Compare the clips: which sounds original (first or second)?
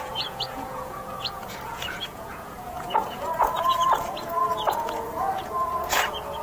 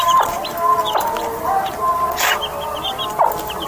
second